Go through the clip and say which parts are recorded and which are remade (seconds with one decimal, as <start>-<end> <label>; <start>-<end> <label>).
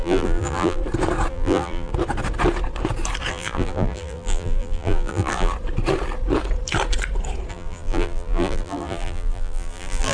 0.0-0.8 remade; 0.8-1.3 recorded; 1.3-1.9 remade; 1.9-3.3 recorded; 3.3-5.5 remade; 5.5-7.5 recorded; 7.5-10.1 remade